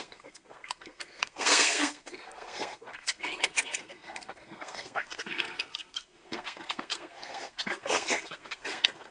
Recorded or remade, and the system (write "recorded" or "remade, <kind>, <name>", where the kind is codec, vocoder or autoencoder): remade, codec, SNAC